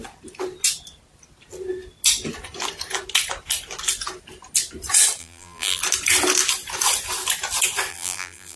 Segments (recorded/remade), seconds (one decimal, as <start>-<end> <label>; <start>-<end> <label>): 0.0-5.2 recorded; 5.2-5.8 remade; 5.8-7.9 recorded; 7.9-8.6 remade